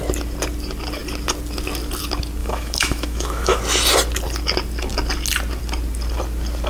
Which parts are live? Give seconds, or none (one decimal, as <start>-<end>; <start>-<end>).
0.0-2.4; 3.6-6.7